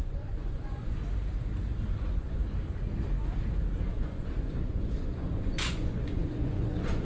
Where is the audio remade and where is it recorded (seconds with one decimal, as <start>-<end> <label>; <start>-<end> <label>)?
0.0-1.0 remade; 1.0-1.9 recorded; 1.9-2.4 remade; 2.4-3.9 recorded; 3.9-7.0 remade